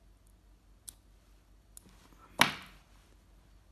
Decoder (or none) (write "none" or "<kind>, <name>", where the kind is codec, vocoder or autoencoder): none